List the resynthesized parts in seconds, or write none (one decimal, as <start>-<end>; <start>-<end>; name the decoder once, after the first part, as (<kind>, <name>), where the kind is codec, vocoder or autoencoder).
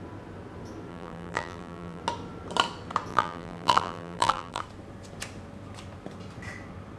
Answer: 0.9-2.0 (vocoder, BigVGAN v2); 3.1-4.6